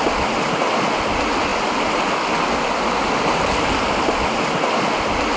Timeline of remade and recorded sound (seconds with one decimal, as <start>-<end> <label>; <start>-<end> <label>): 0.0-5.4 recorded